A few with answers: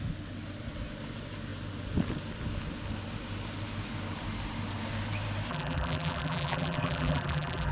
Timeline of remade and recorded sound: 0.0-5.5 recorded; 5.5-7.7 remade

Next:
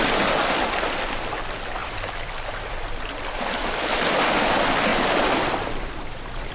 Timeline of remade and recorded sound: 0.0-6.5 recorded

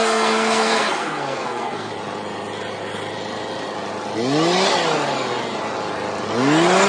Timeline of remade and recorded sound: 0.0-1.9 remade; 1.9-6.9 recorded

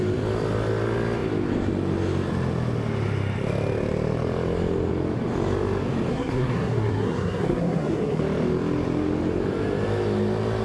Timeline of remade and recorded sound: 0.0-6.1 recorded; 6.1-8.2 remade; 8.2-10.6 recorded

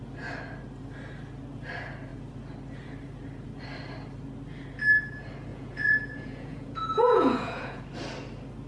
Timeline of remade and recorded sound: 0.0-5.5 recorded; 5.5-7.8 remade; 7.8-8.7 recorded

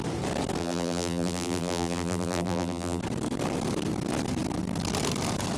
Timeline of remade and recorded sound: 0.0-0.6 recorded; 0.6-3.0 remade; 3.0-5.6 recorded